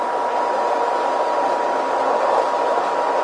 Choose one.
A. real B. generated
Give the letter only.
A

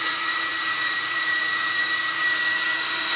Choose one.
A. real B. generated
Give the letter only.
B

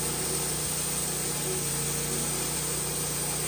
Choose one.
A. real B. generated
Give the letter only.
A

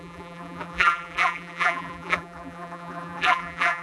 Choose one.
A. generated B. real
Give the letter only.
A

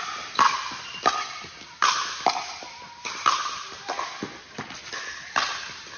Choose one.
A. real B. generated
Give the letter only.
A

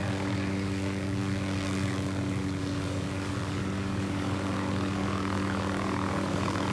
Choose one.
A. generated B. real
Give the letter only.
A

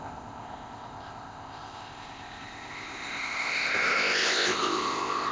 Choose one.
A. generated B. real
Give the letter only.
A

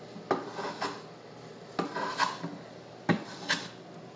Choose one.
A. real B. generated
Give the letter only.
A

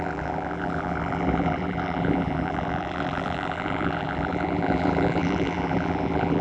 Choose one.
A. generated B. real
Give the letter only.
A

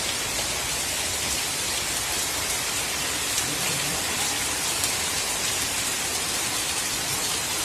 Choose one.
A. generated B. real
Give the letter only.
A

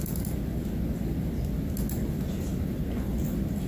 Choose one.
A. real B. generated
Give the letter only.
A